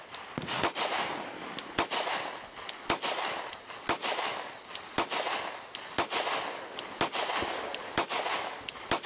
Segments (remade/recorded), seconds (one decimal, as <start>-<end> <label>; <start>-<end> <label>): 0.0-9.1 recorded